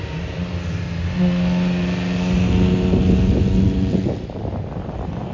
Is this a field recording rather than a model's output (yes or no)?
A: yes